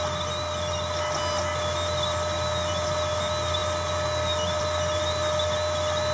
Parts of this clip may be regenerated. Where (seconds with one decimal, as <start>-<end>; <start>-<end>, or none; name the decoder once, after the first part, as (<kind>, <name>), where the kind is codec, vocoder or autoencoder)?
none